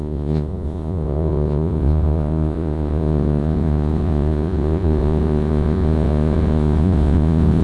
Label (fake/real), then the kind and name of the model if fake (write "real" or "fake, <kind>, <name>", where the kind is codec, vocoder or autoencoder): fake, vocoder, Vocos